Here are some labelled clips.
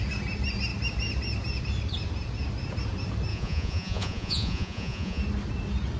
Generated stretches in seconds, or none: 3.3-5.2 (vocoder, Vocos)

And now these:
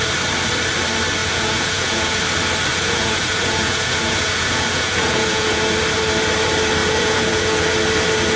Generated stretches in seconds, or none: 1.2-2.2 (vocoder, Vocos); 2.7-5.6; 6.8-7.6

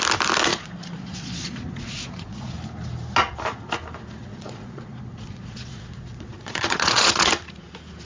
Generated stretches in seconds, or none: 0.5-2.5 (vocoder, Vocos); 4.2-7.3

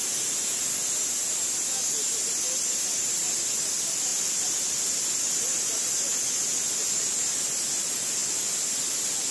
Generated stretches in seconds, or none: none

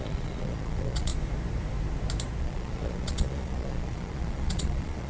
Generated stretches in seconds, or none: 0.0-1.1 (vocoder, Vocos); 2.4-5.1

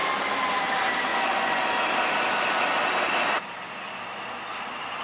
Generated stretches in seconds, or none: 1.1-1.6 (vocoder, Vocos)

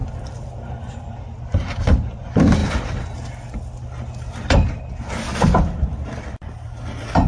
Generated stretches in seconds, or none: none